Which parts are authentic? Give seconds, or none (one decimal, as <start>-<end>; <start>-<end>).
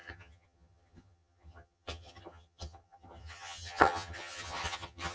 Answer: none